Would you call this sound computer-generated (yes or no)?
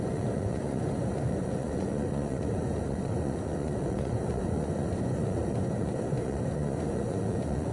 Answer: yes